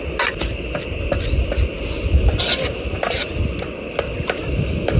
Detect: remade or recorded recorded